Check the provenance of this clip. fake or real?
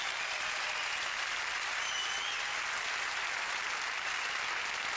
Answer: real